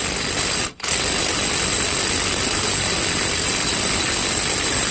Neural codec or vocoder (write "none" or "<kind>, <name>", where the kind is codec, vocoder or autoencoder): none